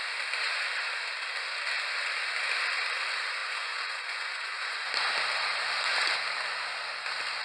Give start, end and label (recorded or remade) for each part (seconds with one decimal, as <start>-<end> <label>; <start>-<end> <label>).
0.0-3.4 recorded; 3.4-4.9 remade; 4.9-7.4 recorded